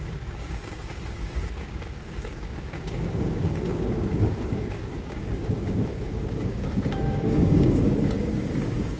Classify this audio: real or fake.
fake